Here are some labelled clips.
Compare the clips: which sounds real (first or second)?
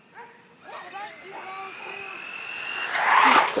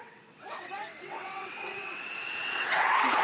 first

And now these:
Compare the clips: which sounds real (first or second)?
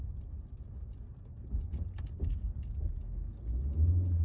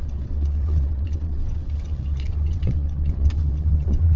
first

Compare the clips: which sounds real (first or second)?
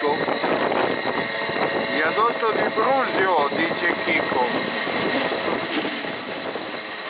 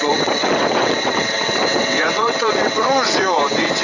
first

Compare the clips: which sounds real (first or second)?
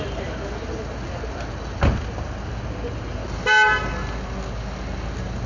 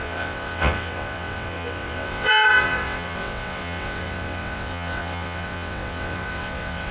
first